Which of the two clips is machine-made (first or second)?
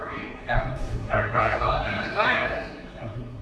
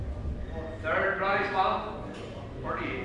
first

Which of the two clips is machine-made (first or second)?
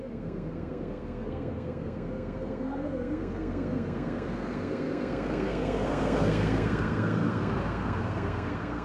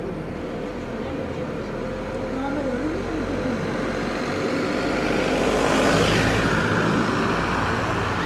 first